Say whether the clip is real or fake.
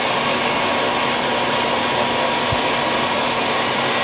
real